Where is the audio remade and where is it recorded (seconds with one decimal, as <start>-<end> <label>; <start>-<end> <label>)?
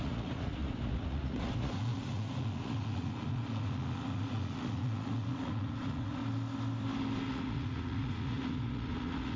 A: 0.0-6.2 remade; 6.2-7.3 recorded; 7.3-9.4 remade